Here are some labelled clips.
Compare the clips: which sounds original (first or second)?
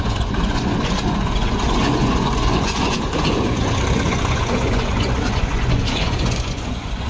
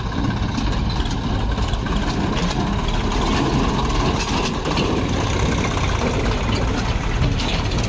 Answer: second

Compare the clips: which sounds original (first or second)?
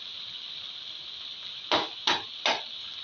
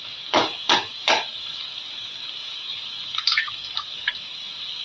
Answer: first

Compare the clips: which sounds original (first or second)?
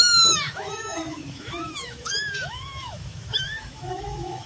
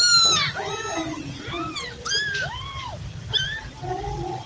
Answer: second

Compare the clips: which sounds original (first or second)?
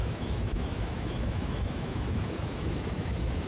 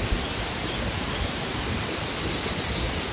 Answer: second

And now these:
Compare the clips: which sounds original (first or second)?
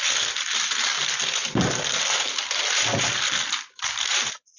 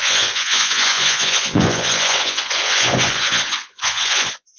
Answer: first